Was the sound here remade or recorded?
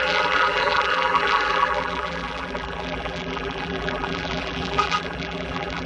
remade